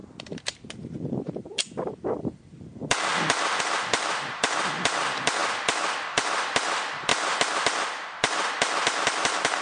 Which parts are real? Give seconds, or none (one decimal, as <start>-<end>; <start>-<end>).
3.6-7.1; 8.5-9.6